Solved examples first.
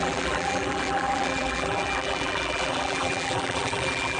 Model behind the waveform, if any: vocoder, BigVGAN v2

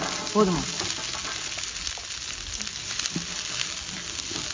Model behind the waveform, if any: none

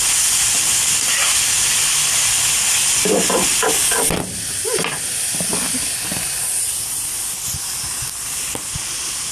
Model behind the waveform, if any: none